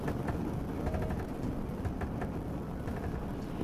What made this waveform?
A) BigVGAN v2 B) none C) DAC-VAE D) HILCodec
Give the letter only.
B